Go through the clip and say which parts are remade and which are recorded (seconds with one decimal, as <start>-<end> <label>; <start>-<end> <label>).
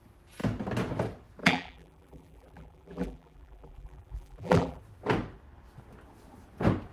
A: 0.0-1.4 recorded; 1.4-4.8 remade; 4.8-6.9 recorded